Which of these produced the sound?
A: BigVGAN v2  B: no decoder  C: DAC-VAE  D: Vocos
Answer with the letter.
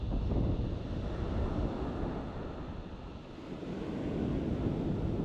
B